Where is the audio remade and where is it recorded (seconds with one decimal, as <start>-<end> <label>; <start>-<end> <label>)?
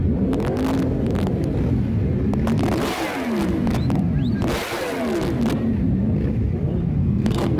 0.0-7.0 recorded; 7.0-7.6 remade